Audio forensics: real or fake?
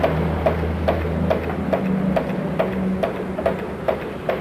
real